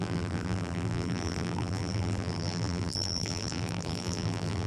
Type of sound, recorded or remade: remade